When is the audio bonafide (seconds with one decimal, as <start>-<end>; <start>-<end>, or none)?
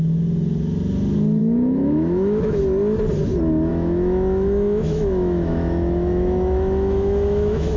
0.0-1.4; 2.6-3.7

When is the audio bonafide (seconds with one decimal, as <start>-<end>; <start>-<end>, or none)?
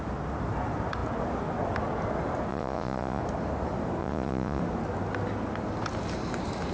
0.0-2.5; 3.2-4.0; 4.6-6.7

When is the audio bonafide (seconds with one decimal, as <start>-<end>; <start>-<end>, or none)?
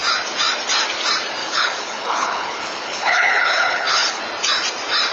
0.0-1.4; 4.2-5.1